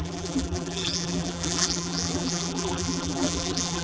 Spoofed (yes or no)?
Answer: yes